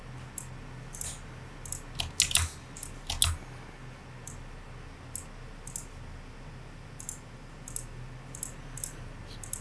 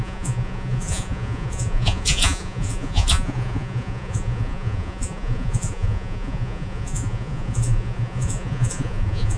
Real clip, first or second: first